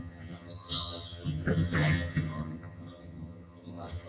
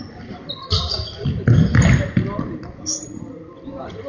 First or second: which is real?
second